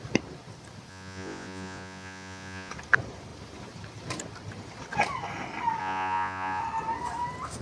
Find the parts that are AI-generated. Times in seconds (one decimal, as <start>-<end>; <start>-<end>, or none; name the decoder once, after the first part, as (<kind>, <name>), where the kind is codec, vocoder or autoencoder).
0.9-2.7 (vocoder, Vocos); 5.8-6.6